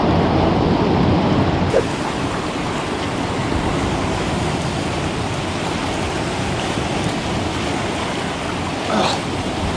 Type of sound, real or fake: real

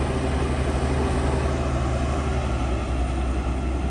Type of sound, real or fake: real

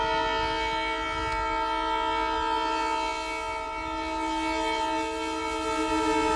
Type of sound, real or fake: real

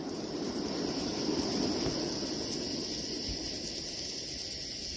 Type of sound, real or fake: real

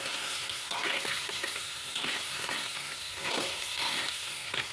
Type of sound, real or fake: fake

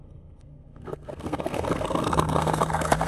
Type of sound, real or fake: fake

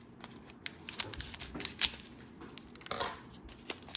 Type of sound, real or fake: real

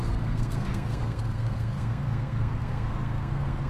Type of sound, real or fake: fake